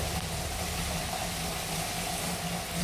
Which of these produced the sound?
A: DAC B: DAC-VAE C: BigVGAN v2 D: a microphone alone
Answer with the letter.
D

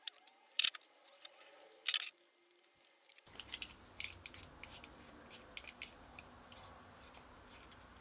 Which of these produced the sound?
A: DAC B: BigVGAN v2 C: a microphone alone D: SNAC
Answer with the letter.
C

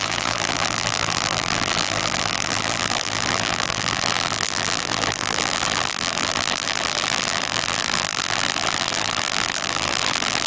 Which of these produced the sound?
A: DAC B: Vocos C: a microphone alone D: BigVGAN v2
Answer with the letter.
D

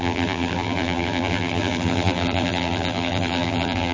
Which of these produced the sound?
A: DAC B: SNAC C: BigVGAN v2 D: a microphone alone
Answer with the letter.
C